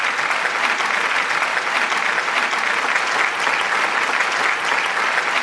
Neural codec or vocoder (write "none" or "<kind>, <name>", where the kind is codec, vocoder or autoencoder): none